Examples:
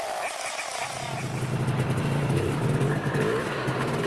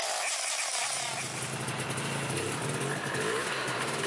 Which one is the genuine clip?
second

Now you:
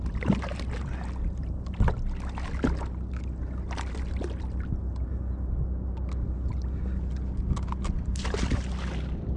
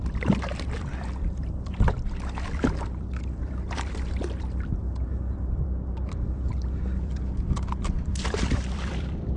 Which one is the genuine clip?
first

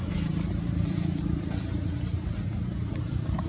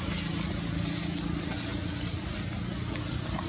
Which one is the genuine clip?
second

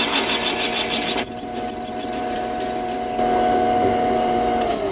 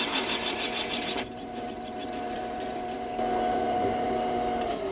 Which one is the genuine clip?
first